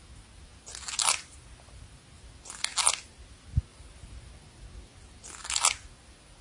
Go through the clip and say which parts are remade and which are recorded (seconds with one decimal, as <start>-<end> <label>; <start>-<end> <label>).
0.0-1.0 recorded; 1.0-1.9 remade; 1.9-3.7 recorded; 3.7-4.3 remade; 4.3-6.4 recorded